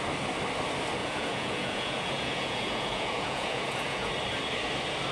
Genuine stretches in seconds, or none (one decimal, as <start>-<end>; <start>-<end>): 0.0-1.0; 4.1-5.1